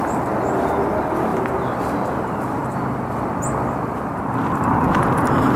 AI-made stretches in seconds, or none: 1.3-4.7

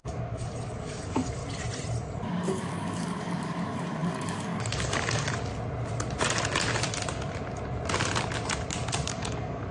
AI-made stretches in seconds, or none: 0.0-1.4; 2.0-5.5; 9.1-9.7

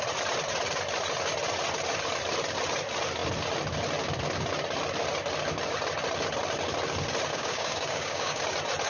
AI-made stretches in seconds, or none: 7.3-8.4

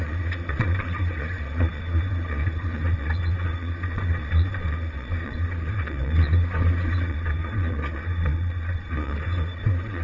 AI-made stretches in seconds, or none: 0.0-10.0

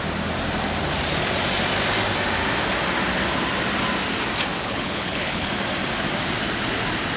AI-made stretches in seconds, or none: 4.6-5.5

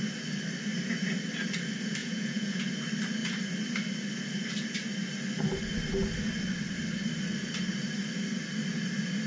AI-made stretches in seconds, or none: 2.0-2.7